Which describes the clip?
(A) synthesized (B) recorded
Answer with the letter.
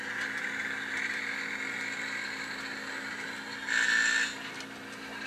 B